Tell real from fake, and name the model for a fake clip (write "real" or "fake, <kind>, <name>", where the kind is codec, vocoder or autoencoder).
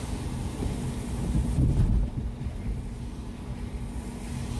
real